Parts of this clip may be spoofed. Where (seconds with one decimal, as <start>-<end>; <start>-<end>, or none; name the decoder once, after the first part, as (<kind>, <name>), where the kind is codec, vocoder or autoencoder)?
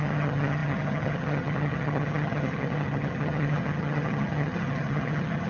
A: 0.0-5.5 (vocoder, HiFi-GAN)